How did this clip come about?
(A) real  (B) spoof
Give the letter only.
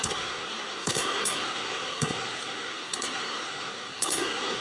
B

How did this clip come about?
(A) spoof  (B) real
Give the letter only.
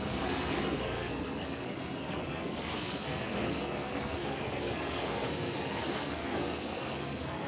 A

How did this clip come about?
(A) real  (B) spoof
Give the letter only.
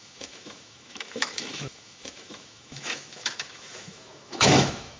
B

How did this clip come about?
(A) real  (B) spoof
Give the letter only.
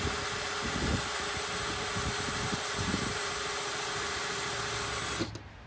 A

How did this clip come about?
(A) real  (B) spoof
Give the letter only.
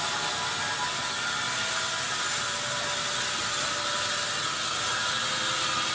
A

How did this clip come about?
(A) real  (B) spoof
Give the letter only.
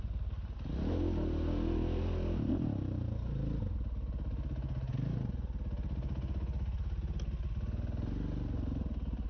A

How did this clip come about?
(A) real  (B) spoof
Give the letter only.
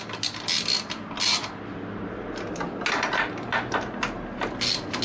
A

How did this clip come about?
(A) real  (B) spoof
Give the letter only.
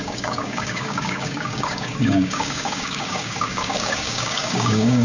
B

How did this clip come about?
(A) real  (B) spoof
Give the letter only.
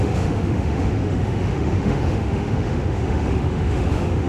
B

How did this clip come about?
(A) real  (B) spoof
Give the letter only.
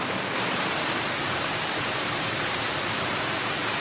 B